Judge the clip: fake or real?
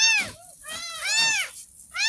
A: real